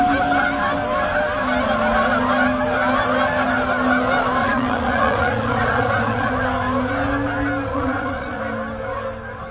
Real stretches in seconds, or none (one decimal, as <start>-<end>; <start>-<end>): 0.0-4.4; 6.3-7.7; 8.4-9.5